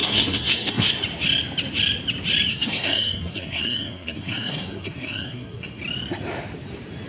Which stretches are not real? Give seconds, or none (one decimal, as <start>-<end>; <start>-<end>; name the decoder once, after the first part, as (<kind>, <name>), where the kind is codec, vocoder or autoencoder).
0.0-0.9 (codec, SNAC); 2.5-5.8